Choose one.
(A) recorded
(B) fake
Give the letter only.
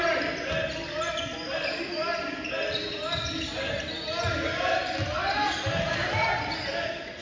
A